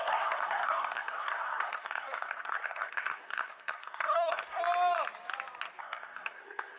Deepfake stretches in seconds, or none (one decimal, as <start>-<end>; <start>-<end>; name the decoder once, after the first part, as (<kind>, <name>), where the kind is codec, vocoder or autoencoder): 0.0-4.6 (codec, SNAC); 5.8-6.8